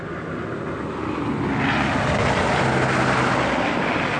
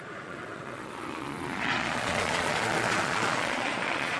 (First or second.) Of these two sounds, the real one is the first